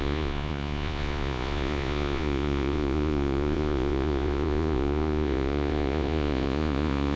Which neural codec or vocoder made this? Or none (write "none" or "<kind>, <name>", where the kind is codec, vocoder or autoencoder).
vocoder, Vocos